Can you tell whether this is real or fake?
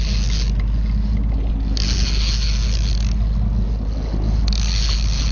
real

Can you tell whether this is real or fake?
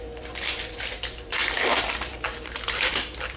fake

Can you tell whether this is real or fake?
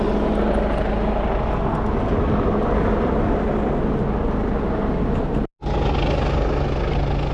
real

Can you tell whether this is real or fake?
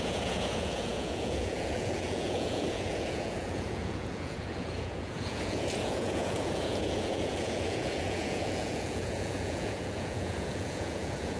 fake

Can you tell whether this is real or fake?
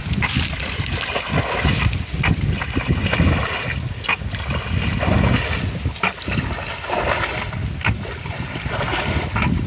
real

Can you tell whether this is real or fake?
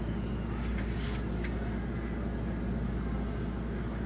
real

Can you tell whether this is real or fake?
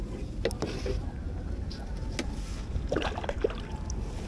real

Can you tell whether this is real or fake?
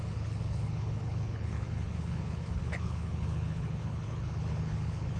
fake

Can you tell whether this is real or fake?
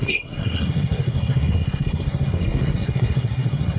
fake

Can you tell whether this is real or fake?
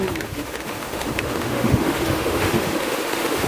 fake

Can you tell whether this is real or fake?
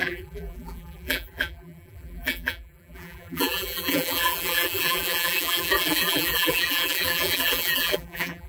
fake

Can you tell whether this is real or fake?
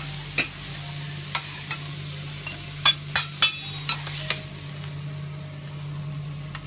real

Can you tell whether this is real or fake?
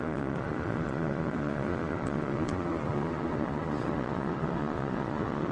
fake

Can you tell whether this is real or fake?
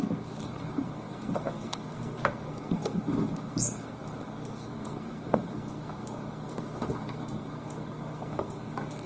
fake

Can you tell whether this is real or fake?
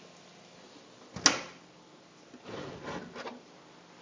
real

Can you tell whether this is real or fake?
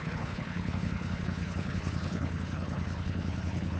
fake